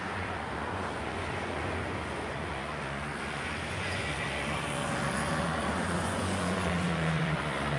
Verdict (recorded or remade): remade